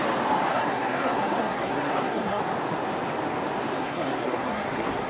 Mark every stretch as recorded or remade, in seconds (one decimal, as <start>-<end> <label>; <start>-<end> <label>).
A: 0.0-0.5 recorded; 0.5-2.4 remade; 2.4-3.8 recorded; 3.8-5.1 remade